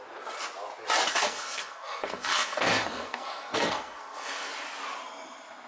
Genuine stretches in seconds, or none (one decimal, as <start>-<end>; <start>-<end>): 0.0-1.1; 4.5-5.7